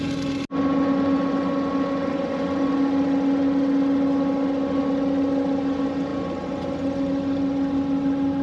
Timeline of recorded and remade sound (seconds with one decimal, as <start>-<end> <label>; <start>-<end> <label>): 0.0-8.4 recorded